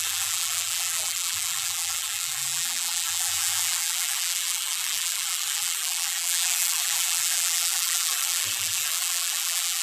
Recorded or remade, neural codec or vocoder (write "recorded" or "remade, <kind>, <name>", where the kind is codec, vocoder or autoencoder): remade, vocoder, BigVGAN v2